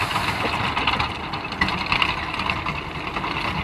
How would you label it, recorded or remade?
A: recorded